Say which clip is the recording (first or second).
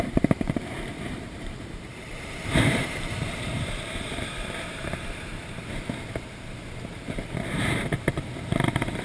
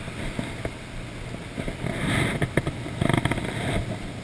second